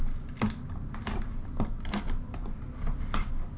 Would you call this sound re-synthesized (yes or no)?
no